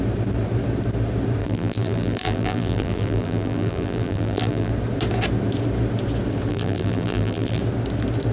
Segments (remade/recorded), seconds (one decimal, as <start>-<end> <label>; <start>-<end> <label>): 0.0-1.4 recorded; 1.4-4.7 remade; 4.7-6.5 recorded; 6.5-7.6 remade; 7.6-8.3 recorded